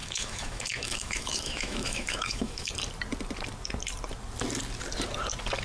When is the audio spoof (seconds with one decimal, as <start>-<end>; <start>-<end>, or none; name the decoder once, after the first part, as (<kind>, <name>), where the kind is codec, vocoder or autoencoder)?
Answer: 0.0-2.7 (autoencoder, DAC-VAE)